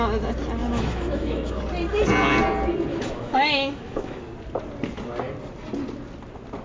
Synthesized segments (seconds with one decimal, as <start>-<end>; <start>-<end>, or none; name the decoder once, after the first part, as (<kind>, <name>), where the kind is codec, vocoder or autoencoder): 0.6-1.6 (autoencoder, DAC-VAE); 2.9-4.2